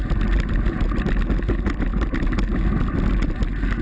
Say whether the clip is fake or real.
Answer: real